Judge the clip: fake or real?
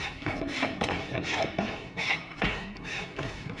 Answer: fake